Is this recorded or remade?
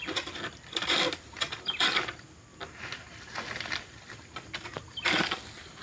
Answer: recorded